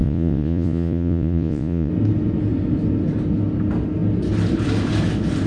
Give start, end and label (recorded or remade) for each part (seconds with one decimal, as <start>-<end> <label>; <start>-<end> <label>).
0.0-1.9 remade; 1.9-5.5 recorded